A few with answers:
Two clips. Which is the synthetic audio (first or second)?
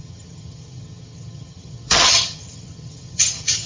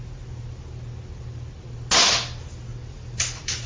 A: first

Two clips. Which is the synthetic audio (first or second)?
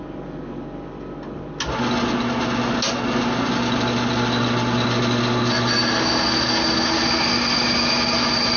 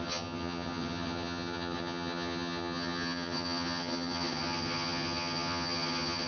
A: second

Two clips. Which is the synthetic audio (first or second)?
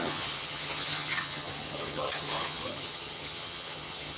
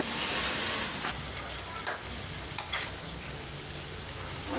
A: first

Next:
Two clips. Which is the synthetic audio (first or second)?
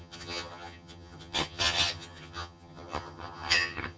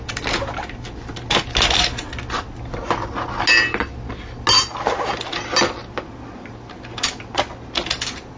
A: first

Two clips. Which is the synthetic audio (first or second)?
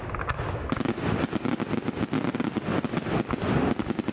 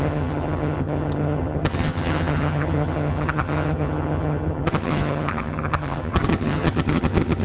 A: second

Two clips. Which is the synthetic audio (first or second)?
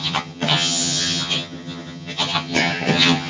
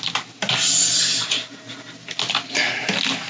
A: first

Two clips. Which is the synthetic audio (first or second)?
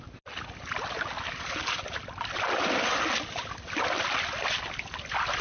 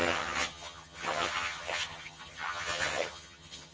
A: second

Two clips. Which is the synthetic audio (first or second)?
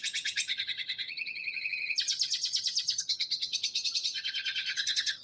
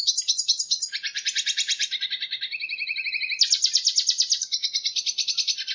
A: first